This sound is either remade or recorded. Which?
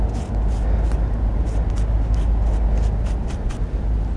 recorded